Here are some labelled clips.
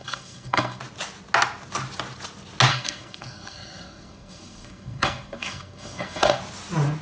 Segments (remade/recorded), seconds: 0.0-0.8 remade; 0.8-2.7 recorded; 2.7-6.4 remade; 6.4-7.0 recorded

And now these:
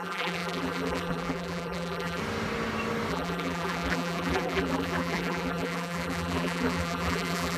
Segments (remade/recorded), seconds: 0.0-2.2 remade; 2.2-3.1 recorded; 3.1-7.6 remade